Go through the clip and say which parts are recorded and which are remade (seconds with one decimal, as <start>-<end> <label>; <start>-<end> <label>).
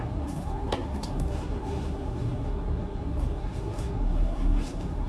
0.0-5.1 remade